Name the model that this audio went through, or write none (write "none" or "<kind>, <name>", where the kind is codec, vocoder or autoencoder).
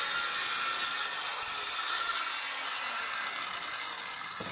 none